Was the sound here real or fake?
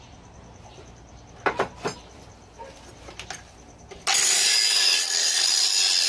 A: real